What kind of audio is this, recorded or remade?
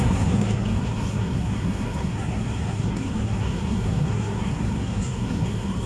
remade